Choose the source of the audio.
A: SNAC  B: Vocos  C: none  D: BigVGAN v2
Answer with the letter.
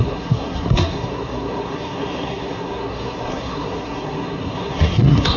A